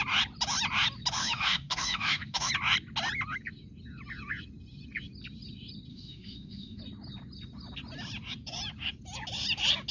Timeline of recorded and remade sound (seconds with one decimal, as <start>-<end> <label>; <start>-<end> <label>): 0.0-1.2 recorded; 1.2-2.5 remade; 2.5-5.9 recorded; 5.9-6.8 remade; 6.8-9.9 recorded